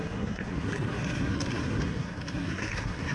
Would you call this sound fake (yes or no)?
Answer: yes